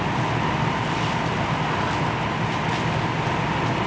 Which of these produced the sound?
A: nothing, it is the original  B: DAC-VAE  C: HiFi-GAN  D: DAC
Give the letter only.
A